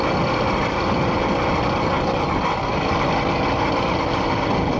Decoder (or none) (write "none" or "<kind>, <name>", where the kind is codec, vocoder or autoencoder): none